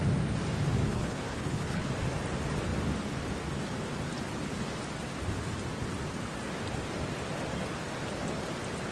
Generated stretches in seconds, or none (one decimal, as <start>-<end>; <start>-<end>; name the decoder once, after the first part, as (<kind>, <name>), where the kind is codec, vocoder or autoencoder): 0.9-1.9 (codec, HILCodec)